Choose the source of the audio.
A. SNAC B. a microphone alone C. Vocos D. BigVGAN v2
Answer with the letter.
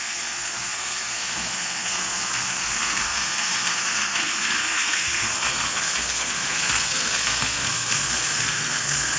A